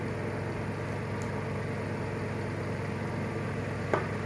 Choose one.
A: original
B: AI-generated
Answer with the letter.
A